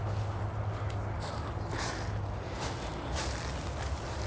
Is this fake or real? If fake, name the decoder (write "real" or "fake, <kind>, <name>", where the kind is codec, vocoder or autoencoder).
real